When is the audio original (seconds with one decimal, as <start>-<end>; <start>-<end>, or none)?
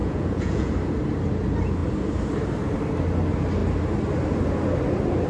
0.7-5.3